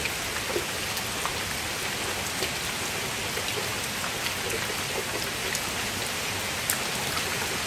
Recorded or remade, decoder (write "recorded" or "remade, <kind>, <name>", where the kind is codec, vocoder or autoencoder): recorded